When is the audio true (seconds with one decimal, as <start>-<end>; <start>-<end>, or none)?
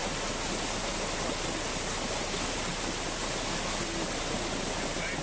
0.0-5.2